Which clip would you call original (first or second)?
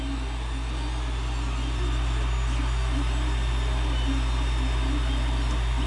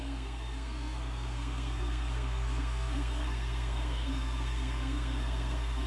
first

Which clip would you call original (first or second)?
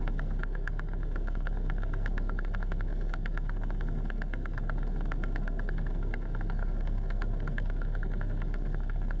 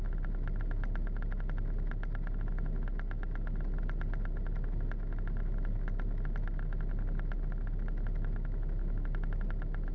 second